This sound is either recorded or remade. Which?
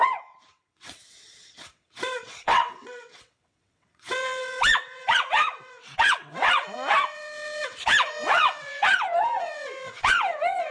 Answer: remade